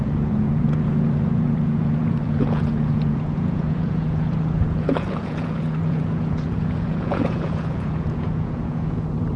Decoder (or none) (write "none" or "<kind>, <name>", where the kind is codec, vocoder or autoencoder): vocoder, Vocos